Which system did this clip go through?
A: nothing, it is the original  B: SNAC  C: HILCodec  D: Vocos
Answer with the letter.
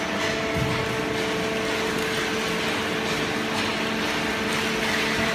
A